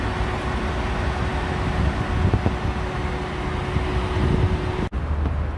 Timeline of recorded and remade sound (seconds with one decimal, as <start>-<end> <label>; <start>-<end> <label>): 0.0-5.6 recorded